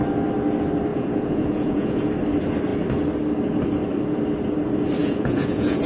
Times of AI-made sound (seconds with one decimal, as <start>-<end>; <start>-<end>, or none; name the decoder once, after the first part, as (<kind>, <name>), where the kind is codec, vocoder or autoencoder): 0.9-2.1 (vocoder, Vocos); 5.0-5.9